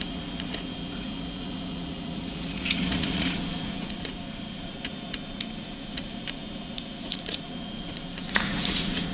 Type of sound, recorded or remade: remade